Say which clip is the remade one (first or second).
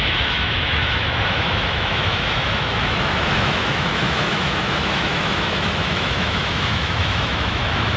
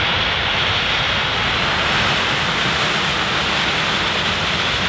first